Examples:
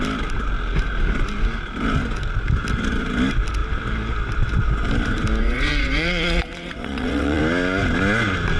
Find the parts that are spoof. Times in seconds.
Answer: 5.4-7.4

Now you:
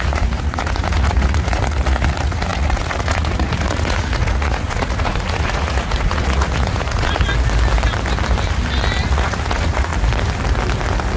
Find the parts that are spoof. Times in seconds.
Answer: 0.0-7.3; 9.0-9.9

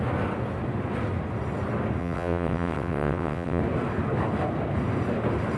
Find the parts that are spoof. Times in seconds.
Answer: 2.0-3.6

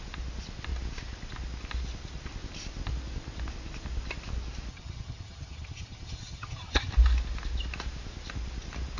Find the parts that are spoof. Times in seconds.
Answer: 4.7-6.9

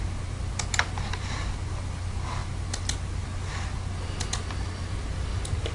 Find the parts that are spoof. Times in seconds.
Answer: none

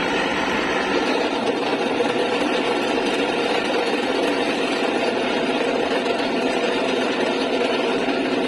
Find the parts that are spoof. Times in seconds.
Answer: 0.0-8.5

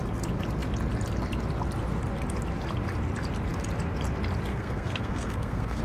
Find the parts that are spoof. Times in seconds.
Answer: 4.5-5.8